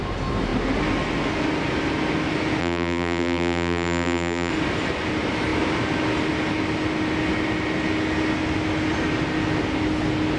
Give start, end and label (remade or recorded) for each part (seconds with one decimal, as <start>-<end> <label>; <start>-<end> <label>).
0.0-2.6 recorded; 2.6-4.5 remade; 4.5-10.4 recorded